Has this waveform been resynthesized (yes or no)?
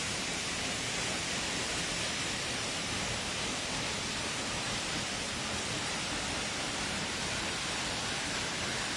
yes